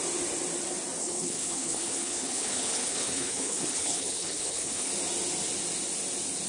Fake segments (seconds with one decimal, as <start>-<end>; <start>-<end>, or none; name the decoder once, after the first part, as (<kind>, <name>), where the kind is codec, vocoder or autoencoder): 1.0-4.9 (codec, HILCodec)

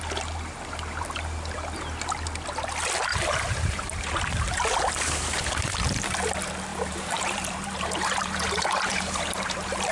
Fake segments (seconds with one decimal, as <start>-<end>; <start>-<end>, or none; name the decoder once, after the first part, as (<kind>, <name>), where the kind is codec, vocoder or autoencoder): 3.1-4.2 (vocoder, BigVGAN v2); 6.7-9.9

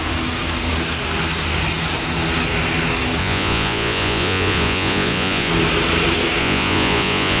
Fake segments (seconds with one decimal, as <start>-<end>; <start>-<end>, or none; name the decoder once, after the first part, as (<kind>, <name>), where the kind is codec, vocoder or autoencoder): 3.2-5.5 (vocoder, Vocos); 6.4-7.4